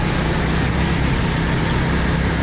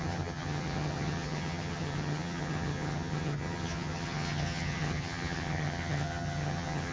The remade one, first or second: second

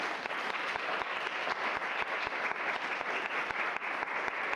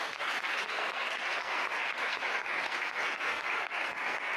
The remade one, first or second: second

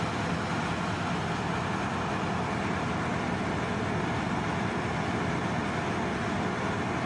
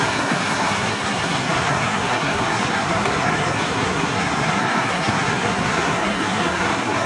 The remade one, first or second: second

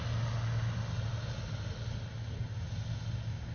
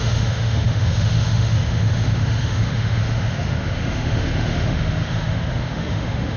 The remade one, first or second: second